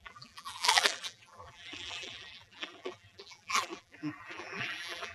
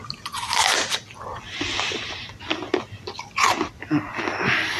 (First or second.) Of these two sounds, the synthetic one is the first